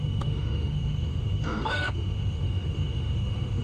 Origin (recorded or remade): remade